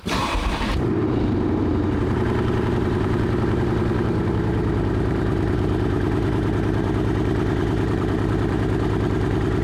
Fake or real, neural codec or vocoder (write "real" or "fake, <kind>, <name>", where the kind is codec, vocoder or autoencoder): fake, vocoder, BigVGAN v2